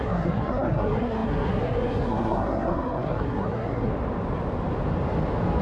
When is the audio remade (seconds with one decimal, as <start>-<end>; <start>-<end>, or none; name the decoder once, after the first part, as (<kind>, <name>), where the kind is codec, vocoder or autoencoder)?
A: 0.0-3.9 (codec, SNAC)